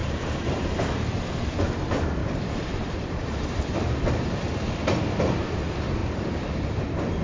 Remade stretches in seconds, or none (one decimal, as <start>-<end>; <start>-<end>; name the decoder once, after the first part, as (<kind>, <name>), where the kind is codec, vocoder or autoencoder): 0.0-1.1 (vocoder, BigVGAN v2); 2.2-5.5; 6.0-6.8

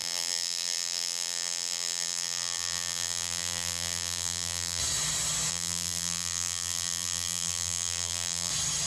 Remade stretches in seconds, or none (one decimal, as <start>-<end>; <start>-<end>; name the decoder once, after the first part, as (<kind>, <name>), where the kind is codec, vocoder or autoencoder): 0.0-4.8 (vocoder, BigVGAN v2); 5.5-8.5